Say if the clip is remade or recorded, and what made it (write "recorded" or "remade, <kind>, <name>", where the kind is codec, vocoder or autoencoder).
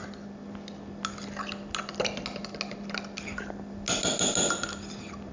recorded